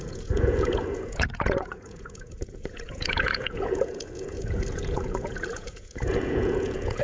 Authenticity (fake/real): fake